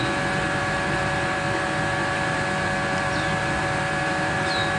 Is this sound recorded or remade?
remade